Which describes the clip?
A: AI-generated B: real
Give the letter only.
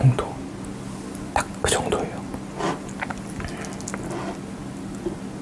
B